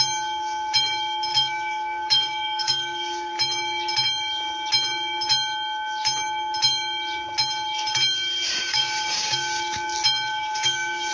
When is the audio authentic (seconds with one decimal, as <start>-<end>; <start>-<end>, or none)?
0.0-1.3; 3.3-8.5; 9.6-10.3